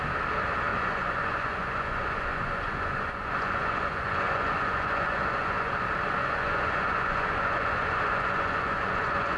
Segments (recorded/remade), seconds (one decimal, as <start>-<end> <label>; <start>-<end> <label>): 0.0-0.7 recorded; 0.7-5.7 remade; 5.7-6.2 recorded; 6.2-9.4 remade